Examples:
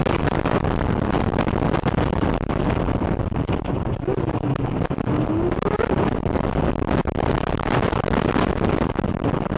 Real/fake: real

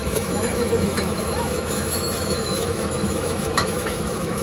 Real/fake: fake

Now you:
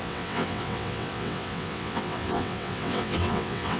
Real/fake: fake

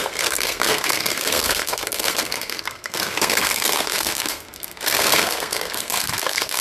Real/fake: fake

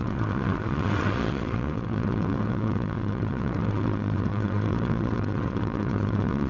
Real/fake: fake